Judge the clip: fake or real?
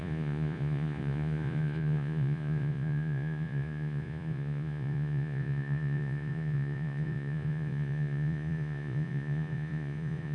fake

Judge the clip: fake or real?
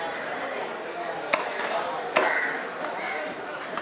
real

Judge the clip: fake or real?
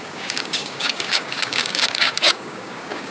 fake